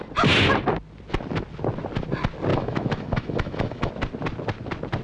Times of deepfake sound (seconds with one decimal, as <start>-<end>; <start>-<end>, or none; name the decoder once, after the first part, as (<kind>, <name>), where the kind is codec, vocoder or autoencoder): 2.5-3.9 (autoencoder, DAC-VAE)